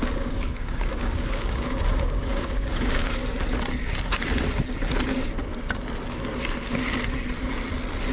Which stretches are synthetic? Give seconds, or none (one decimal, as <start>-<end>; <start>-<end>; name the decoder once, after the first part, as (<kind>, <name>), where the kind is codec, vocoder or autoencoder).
0.0-3.2 (codec, DAC)